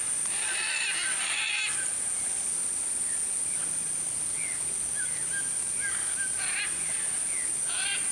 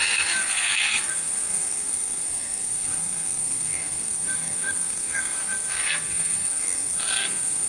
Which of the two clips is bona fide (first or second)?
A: first